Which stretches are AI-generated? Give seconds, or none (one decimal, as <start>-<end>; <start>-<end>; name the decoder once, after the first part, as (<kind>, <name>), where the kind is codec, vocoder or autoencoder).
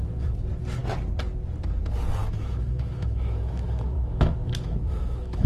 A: 2.2-5.5 (autoencoder, DAC-VAE)